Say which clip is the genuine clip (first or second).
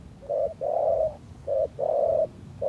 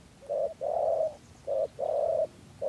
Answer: second